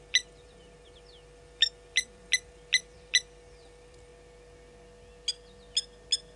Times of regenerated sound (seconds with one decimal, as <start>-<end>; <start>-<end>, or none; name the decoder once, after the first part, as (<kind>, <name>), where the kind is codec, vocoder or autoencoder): 0.0-4.1 (vocoder, BigVGAN v2)